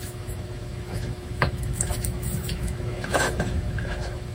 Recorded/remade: remade